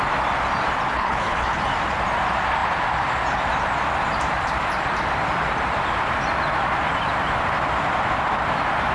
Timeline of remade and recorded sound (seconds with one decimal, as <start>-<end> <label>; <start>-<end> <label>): 0.0-0.9 recorded; 0.9-1.6 remade; 1.6-8.9 recorded